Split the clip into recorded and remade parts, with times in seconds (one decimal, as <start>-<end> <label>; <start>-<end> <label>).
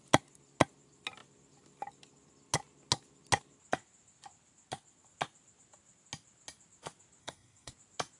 0.0-7.2 recorded; 7.2-7.7 remade; 7.7-8.2 recorded